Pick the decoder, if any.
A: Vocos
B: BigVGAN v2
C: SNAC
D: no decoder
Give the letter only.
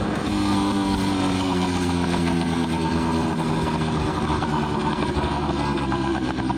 C